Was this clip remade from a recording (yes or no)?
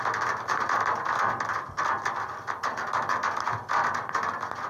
no